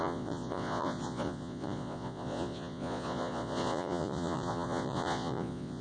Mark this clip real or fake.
fake